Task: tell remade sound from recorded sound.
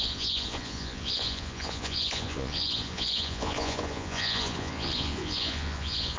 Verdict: remade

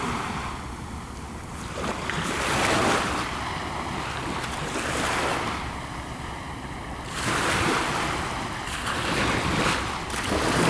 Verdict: recorded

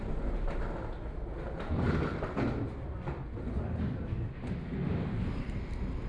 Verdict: recorded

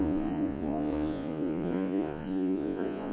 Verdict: remade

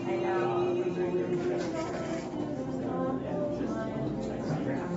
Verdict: recorded